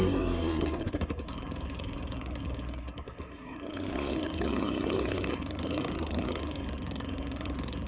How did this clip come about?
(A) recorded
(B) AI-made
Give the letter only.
B